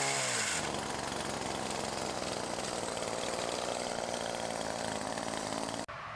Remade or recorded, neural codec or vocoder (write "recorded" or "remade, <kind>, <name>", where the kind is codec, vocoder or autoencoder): recorded